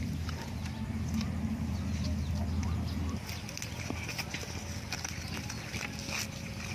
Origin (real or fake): real